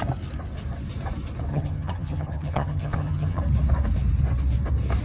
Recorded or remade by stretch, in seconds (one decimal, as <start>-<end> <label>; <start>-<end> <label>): 0.0-1.5 recorded; 1.5-3.4 remade; 3.4-5.0 recorded